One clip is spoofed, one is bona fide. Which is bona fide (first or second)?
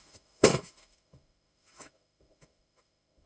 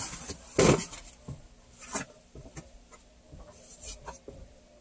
second